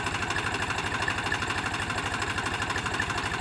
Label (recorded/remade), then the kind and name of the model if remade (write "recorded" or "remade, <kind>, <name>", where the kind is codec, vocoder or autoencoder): recorded